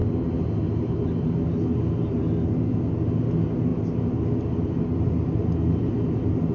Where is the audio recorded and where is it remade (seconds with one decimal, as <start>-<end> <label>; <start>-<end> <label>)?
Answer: 0.0-6.5 recorded